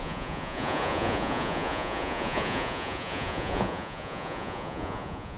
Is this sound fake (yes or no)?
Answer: yes